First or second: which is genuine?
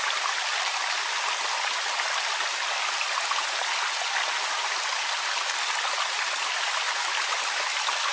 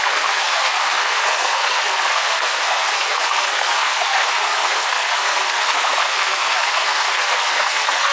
first